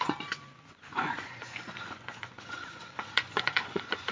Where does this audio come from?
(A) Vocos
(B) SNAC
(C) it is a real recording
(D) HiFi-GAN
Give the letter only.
A